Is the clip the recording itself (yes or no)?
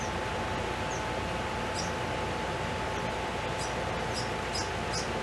yes